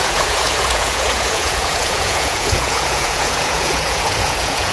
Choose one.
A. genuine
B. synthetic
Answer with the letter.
B